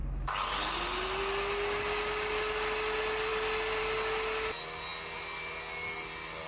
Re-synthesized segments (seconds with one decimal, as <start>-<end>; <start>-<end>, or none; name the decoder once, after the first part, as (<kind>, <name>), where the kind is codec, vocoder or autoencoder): none